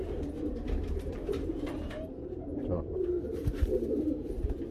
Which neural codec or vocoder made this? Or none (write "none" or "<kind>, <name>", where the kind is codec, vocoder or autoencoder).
vocoder, BigVGAN v2